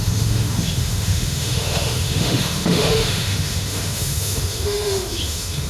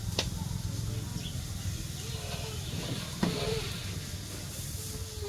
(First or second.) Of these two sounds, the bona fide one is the second